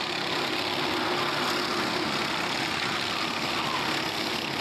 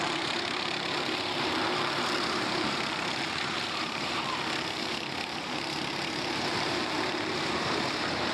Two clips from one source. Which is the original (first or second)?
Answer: first